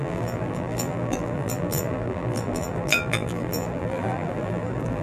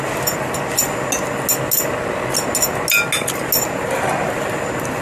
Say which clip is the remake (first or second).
first